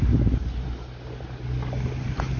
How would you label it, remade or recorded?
recorded